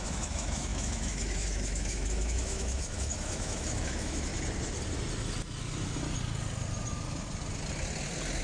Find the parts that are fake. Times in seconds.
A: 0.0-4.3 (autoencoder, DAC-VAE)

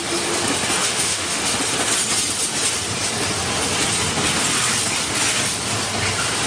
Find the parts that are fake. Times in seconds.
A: 0.8-1.4 (autoencoder, DAC-VAE)

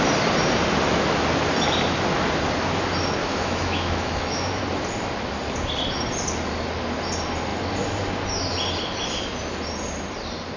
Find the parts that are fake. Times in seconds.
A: 3.2-4.6 (autoencoder, DAC-VAE)

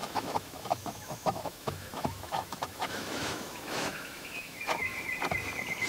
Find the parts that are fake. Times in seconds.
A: 0.0-4.9 (autoencoder, DAC-VAE)

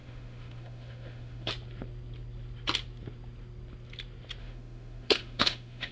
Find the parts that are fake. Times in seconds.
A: 0.0-1.5 (autoencoder, DAC-VAE); 4.4-5.9

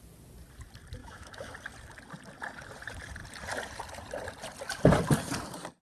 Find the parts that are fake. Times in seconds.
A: 1.0-1.5 (autoencoder, DAC-VAE)

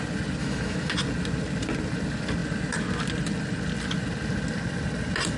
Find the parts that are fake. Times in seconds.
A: 0.4-0.9 (autoencoder, DAC-VAE)

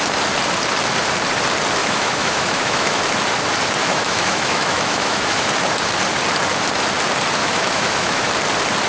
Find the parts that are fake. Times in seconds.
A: 1.8-3.0 (autoencoder, DAC-VAE); 3.8-5.5; 7.4-8.3